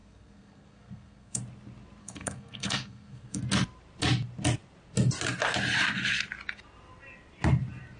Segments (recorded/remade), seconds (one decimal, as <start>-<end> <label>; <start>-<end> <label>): 0.0-1.4 remade; 1.4-2.0 recorded; 2.0-3.4 remade; 3.4-8.0 recorded